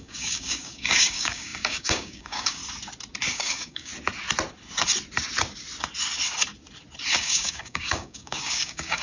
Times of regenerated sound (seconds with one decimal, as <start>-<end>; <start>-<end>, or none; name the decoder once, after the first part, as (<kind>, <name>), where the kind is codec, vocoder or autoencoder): 0.0-2.6 (codec, DAC); 3.3-3.9; 7.1-9.0